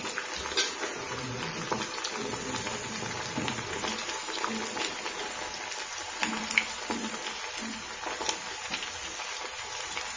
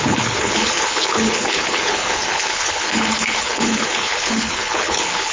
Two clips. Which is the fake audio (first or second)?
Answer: second